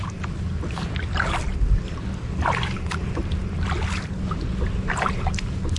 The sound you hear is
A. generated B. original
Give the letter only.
B